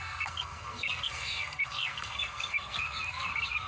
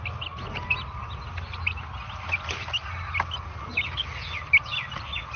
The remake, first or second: first